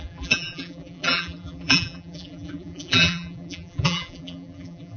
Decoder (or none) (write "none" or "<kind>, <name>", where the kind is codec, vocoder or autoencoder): vocoder, BigVGAN v2